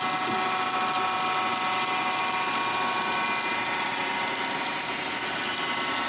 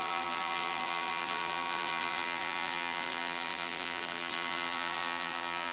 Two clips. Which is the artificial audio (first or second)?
second